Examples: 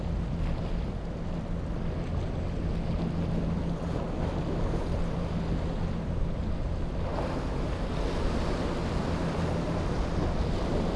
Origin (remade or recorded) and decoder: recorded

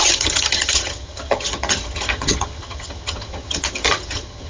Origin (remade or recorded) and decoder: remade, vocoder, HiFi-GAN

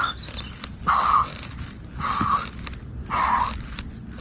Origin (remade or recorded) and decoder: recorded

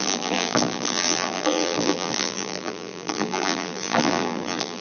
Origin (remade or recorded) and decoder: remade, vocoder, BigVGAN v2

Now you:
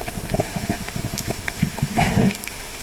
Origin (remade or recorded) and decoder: remade, autoencoder, DAC-VAE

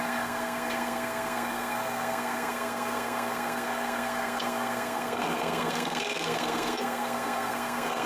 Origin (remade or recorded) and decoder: remade, codec, SNAC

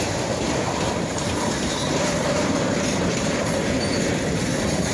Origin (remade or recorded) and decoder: remade, vocoder, BigVGAN v2